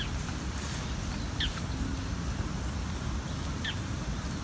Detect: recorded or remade recorded